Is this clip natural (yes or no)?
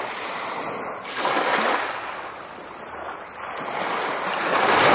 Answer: yes